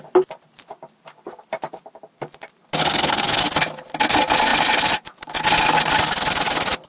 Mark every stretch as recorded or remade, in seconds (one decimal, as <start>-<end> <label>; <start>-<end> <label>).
0.0-2.8 recorded; 2.8-3.4 remade; 3.4-6.9 recorded